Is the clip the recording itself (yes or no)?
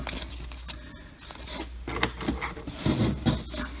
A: yes